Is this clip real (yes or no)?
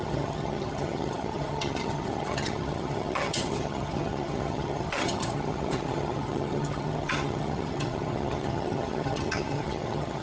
no